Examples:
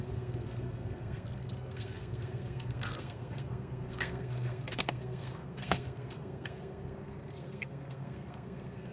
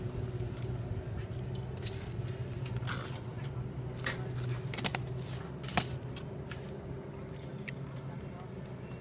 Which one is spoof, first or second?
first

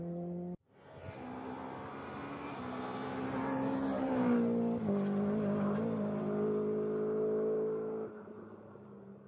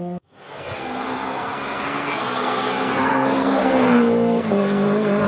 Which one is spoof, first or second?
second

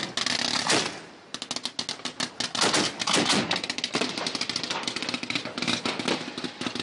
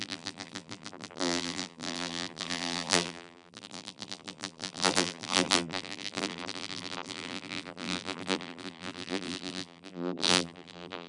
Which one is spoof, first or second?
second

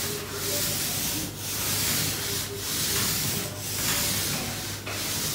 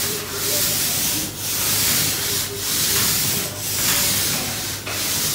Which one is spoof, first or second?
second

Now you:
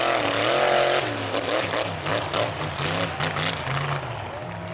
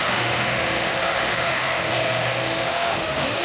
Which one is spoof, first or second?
second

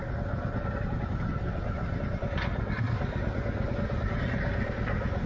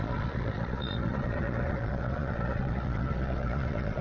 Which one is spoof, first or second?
second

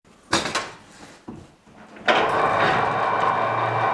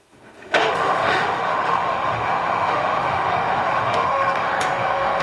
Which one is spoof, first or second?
second